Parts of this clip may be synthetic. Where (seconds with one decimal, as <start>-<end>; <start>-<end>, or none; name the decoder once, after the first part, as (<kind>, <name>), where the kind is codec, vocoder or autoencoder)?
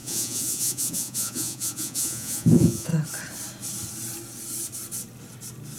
0.0-2.9 (vocoder, Vocos)